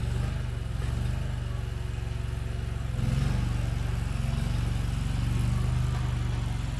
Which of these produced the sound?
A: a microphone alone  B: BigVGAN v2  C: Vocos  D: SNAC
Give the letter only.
A